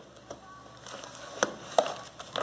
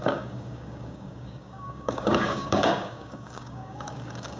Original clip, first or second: first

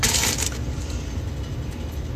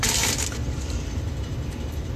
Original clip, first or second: first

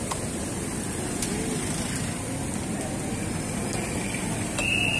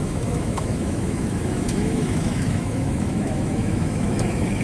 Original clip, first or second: first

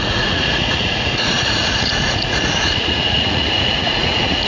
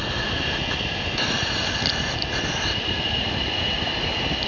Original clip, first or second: second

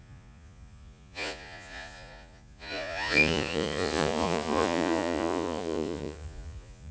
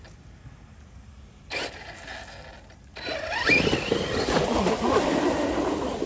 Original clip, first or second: second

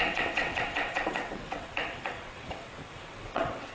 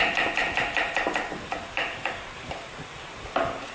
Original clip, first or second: second